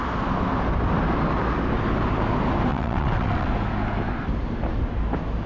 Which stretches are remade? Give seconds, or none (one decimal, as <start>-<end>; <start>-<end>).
2.7-3.5